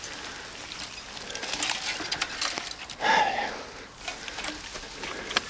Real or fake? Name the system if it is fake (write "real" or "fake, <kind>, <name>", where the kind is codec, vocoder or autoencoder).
real